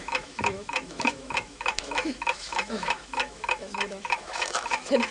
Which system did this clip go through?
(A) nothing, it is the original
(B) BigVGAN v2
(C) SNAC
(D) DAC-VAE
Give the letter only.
D